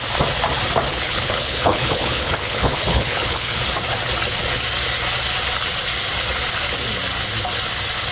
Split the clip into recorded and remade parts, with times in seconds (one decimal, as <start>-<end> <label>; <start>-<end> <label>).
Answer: 0.0-0.9 recorded; 0.9-3.6 remade; 3.6-8.1 recorded